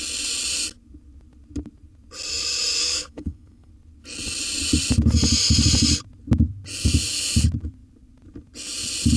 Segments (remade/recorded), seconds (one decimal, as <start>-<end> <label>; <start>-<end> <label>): 0.0-2.8 recorded; 2.8-3.7 remade; 3.7-9.2 recorded